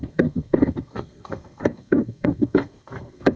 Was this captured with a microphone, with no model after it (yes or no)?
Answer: no